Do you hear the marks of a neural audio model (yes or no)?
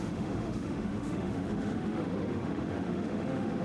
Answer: yes